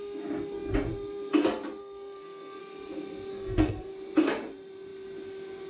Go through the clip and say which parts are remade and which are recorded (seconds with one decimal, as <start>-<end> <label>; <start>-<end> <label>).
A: 0.0-1.8 recorded; 1.8-2.6 remade; 2.6-3.3 recorded; 3.3-3.9 remade; 3.9-5.7 recorded